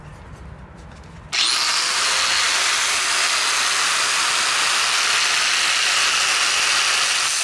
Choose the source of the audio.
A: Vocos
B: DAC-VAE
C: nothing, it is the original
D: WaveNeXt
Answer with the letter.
C